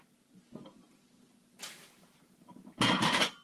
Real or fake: real